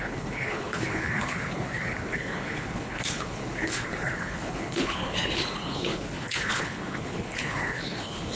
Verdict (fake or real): fake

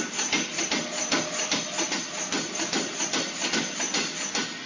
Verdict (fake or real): real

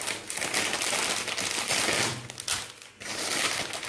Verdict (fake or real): real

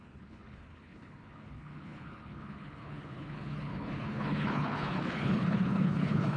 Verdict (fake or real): fake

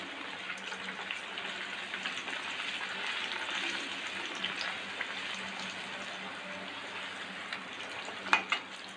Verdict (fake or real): real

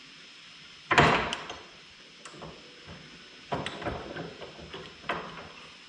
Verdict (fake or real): real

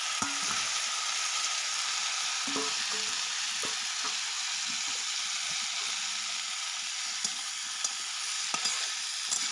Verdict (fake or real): real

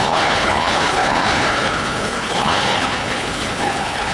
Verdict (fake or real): fake